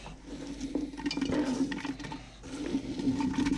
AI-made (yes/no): no